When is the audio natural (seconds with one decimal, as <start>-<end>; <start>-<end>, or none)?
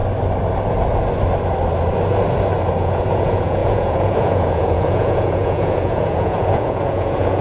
0.0-2.8